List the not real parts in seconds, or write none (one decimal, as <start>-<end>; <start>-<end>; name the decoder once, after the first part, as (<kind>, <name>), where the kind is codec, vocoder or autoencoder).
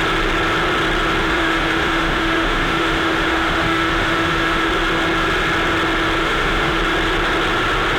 1.2-4.7 (autoencoder, DAC-VAE); 6.2-6.8